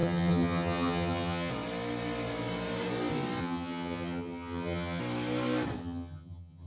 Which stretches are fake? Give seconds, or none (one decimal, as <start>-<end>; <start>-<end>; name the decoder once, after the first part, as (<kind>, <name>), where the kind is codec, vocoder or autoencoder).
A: 0.0-1.5 (vocoder, HiFi-GAN); 3.4-5.0; 5.8-6.7